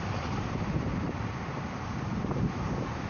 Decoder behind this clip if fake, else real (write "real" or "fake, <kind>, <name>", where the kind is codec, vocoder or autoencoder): fake, vocoder, BigVGAN v2